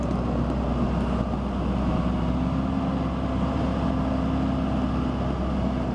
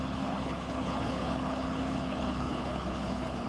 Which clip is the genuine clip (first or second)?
first